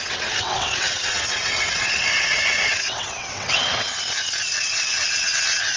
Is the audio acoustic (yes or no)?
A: no